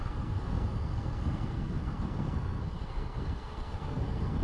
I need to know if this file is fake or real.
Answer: fake